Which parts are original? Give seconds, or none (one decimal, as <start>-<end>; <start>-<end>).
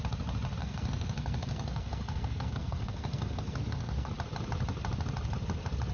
0.0-0.6; 4.1-5.9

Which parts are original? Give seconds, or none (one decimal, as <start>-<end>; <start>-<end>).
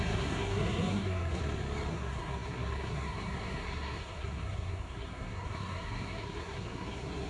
1.4-1.9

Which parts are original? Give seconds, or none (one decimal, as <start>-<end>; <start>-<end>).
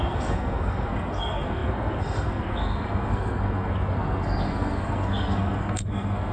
none